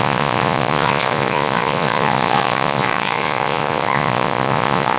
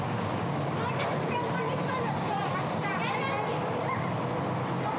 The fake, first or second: first